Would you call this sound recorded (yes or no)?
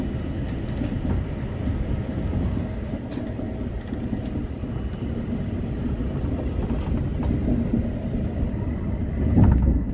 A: yes